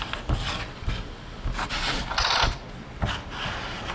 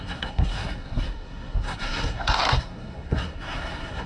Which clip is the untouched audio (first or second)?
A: first